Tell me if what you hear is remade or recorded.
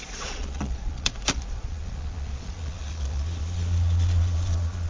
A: remade